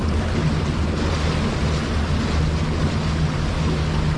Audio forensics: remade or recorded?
recorded